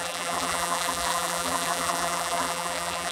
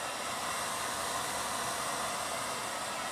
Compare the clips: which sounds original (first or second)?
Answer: second